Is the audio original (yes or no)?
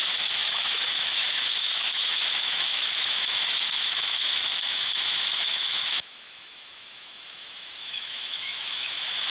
no